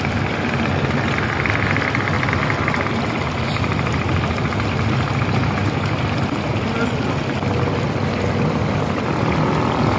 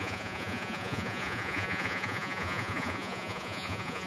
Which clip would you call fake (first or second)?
second